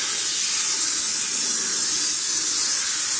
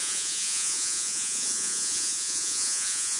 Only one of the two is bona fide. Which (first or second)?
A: first